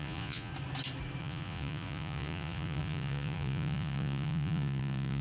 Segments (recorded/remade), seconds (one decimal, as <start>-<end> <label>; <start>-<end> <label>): 0.0-0.5 remade; 0.5-1.2 recorded; 1.2-5.2 remade